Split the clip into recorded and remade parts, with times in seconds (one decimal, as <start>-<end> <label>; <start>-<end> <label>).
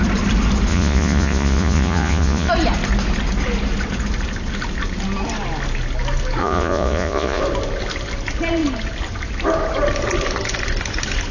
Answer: 0.0-0.7 recorded; 0.7-2.5 remade; 2.5-6.4 recorded; 6.4-7.4 remade; 7.4-11.3 recorded